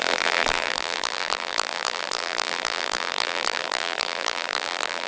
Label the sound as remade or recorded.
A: remade